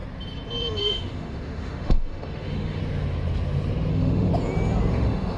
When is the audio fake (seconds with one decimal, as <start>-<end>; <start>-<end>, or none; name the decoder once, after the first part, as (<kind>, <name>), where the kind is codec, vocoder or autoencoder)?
0.8-2.8 (autoencoder, DAC-VAE); 3.9-4.3; 4.9-5.4